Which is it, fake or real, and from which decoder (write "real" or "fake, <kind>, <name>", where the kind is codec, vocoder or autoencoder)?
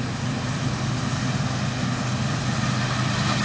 real